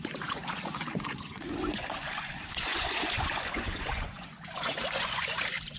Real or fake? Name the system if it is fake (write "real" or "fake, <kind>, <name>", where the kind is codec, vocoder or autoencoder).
fake, vocoder, Vocos